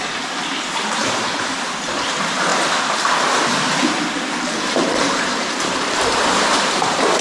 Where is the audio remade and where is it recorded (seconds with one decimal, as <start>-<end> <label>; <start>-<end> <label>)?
0.0-2.5 remade; 2.5-4.1 recorded; 4.1-7.2 remade